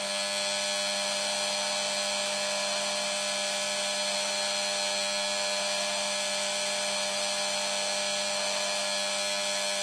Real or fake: real